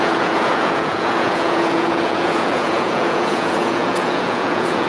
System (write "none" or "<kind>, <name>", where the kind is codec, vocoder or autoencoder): vocoder, Vocos